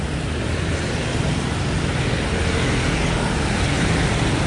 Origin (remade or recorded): recorded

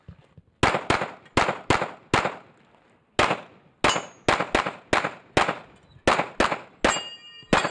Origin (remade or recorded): recorded